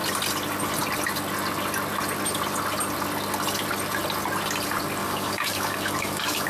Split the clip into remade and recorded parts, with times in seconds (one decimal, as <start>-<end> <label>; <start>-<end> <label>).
0.0-5.0 recorded; 5.0-6.5 remade